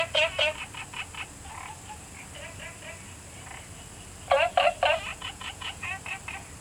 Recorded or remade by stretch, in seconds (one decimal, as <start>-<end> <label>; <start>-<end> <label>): 0.0-5.1 recorded; 5.1-6.0 remade; 6.0-6.6 recorded